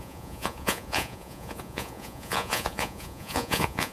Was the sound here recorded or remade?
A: remade